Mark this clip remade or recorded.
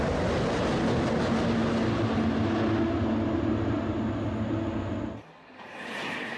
recorded